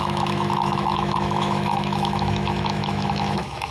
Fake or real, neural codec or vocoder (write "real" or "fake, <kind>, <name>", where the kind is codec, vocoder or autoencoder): fake, autoencoder, DAC-VAE